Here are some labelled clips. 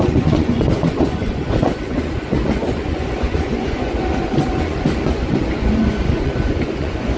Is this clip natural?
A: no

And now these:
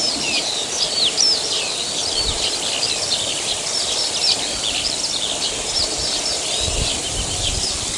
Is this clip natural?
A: yes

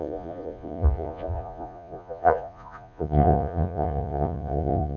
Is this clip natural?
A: no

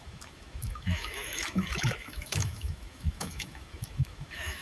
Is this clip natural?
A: no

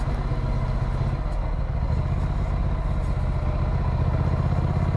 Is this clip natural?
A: yes